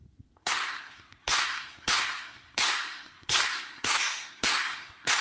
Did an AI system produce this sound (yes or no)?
yes